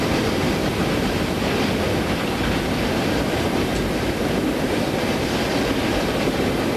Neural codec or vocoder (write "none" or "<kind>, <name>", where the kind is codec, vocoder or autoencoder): vocoder, BigVGAN v2